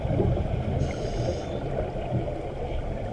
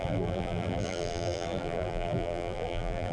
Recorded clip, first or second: first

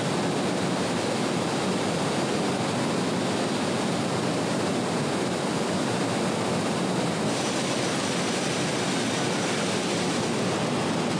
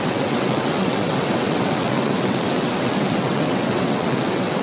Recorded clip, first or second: first